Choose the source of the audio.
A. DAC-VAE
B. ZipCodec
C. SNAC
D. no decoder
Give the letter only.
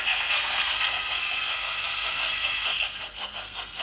C